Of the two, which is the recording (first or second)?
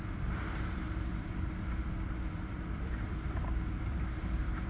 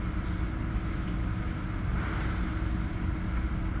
second